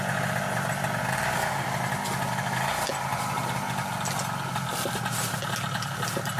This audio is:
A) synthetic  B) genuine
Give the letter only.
B